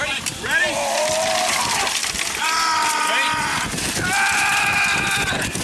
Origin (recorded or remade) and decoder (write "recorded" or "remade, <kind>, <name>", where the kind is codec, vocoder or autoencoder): recorded